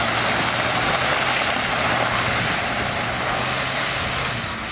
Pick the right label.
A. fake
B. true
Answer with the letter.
B